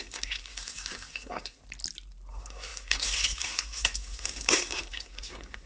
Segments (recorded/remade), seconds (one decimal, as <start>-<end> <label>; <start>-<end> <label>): 0.0-1.6 remade; 1.6-2.3 recorded; 2.3-5.7 remade